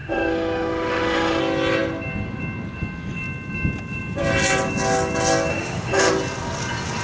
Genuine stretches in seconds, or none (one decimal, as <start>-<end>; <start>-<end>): 1.4-5.5; 6.1-7.0